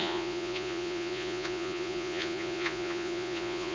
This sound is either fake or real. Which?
fake